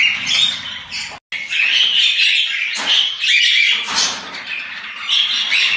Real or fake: real